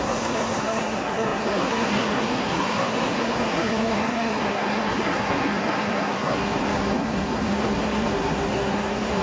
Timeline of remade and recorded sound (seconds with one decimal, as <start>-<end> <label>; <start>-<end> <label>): 0.0-9.2 remade

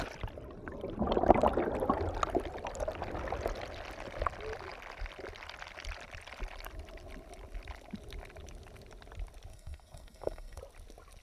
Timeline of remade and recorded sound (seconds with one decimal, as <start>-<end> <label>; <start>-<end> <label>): 0.0-9.5 recorded; 9.5-10.6 remade; 10.6-11.2 recorded

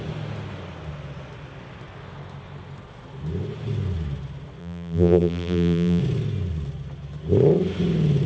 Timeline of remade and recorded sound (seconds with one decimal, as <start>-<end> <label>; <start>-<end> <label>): 0.0-4.6 recorded; 4.6-6.0 remade; 6.0-8.3 recorded

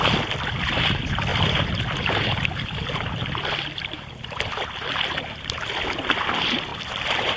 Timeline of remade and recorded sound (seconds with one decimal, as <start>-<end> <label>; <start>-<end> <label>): 0.0-1.3 recorded; 1.3-5.7 remade; 5.7-6.7 recorded; 6.7-7.4 remade

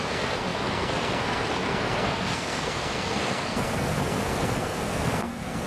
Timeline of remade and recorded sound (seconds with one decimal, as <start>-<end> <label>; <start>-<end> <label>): 0.0-5.7 remade

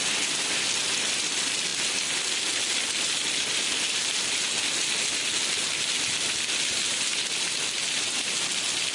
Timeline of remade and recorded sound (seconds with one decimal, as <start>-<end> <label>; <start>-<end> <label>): 0.0-8.9 recorded

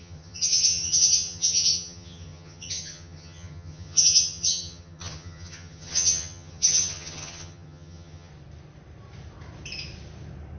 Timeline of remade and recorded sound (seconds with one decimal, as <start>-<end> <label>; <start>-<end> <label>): 0.0-8.3 remade; 8.3-10.6 recorded